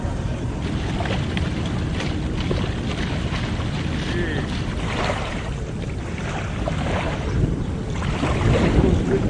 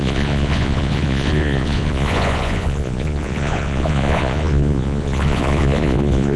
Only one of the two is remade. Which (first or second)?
second